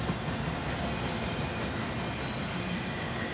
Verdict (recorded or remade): recorded